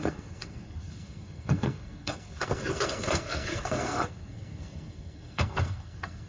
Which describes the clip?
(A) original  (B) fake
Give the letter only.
B